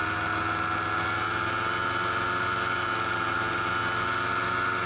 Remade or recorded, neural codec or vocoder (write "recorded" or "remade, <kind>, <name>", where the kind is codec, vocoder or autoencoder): recorded